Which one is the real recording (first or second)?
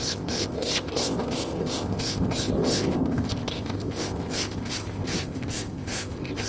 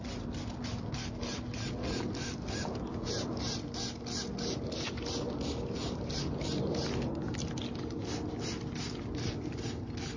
second